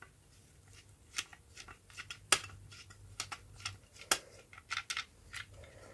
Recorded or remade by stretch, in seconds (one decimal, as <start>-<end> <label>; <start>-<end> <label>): 0.0-5.9 recorded